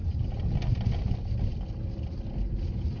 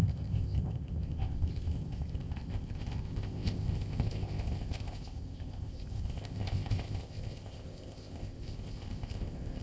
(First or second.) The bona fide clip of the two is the first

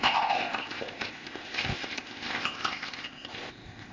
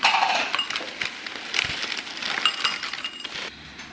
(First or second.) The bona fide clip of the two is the second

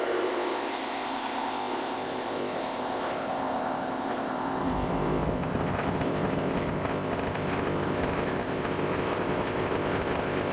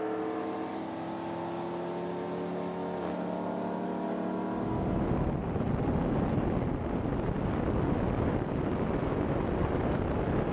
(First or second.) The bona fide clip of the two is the second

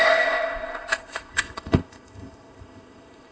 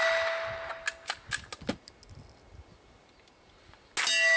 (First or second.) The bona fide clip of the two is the second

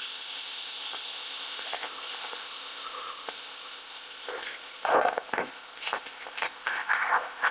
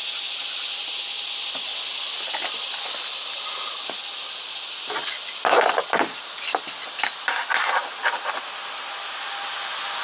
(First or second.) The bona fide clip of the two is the second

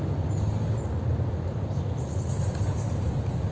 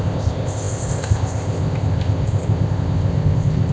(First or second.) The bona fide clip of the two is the first